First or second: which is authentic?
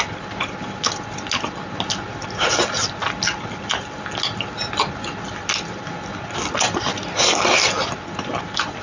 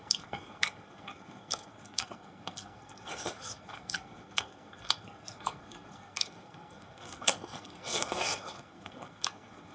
first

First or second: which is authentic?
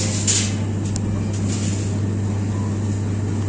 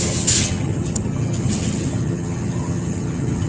first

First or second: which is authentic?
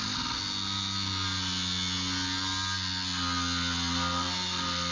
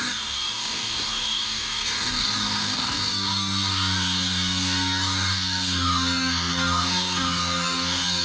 first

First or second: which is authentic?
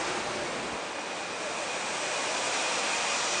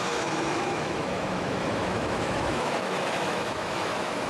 first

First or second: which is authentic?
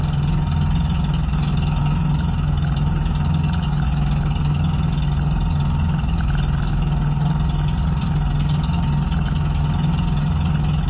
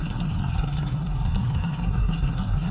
first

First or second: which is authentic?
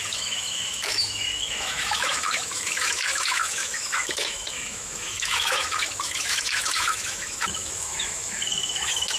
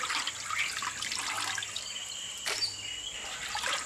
second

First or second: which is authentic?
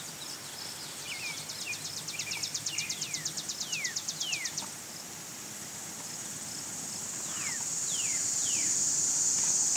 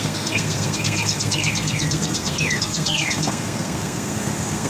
first